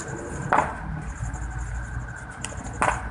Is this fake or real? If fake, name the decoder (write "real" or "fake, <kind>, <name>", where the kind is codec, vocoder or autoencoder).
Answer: real